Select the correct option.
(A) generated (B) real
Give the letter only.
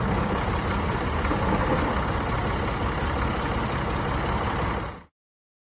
B